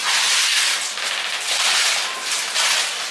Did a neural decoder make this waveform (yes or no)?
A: no